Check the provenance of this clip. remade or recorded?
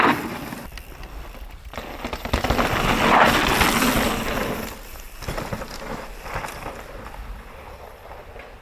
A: recorded